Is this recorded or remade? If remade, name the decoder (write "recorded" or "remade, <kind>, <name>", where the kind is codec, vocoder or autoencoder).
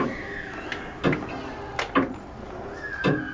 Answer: recorded